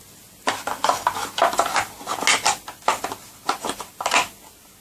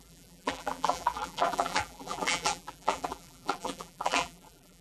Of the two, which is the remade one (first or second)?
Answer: second